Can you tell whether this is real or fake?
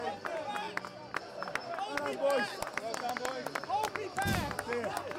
real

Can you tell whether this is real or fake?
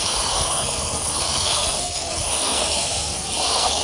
fake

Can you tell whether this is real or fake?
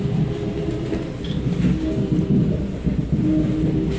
real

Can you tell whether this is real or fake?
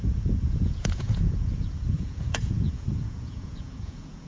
fake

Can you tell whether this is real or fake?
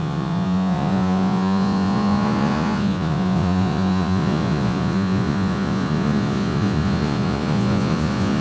fake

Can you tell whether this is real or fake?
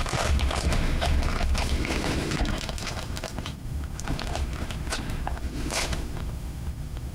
fake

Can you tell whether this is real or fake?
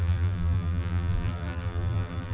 fake